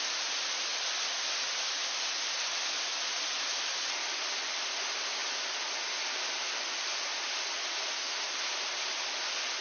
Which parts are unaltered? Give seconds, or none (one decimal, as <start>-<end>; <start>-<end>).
0.0-9.6